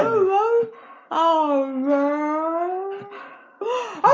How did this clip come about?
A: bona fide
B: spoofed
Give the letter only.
A